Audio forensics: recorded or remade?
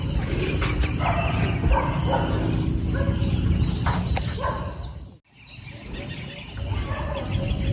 recorded